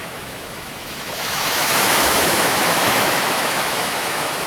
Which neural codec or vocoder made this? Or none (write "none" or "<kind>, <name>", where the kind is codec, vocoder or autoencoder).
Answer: autoencoder, DAC-VAE